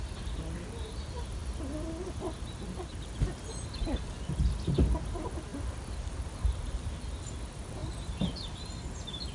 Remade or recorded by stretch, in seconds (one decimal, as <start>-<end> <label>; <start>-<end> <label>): 0.0-9.3 recorded